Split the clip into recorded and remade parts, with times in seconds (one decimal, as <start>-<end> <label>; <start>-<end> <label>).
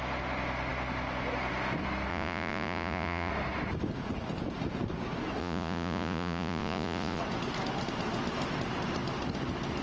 0.0-2.1 recorded; 2.1-3.3 remade; 3.3-5.4 recorded; 5.4-7.2 remade; 7.2-9.8 recorded